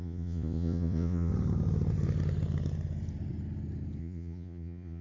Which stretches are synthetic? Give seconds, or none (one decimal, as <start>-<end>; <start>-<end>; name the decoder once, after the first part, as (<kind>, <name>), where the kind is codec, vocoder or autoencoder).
0.0-1.3 (vocoder, Vocos); 4.0-5.0